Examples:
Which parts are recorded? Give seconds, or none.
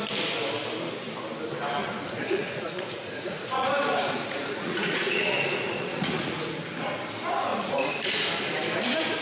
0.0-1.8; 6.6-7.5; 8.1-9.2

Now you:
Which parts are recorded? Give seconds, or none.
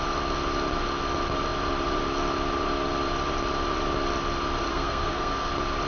0.0-4.7; 5.5-5.9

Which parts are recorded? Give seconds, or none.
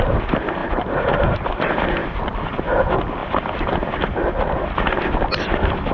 0.0-5.9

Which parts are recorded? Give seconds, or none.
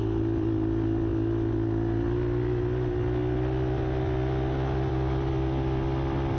0.0-6.4